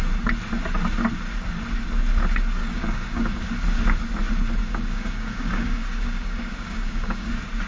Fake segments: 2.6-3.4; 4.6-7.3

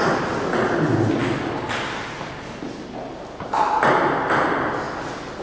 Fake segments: none

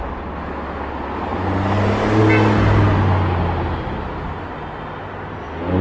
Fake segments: none

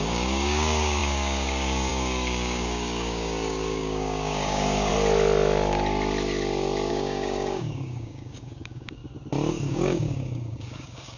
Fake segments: 0.0-4.9; 6.9-9.0; 9.5-11.2

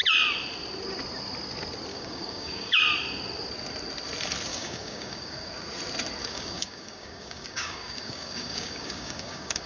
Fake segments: 1.9-2.8; 4.5-5.5; 6.2-9.7

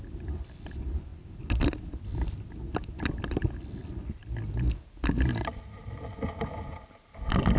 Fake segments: none

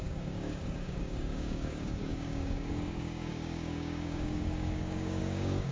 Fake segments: 0.0-5.7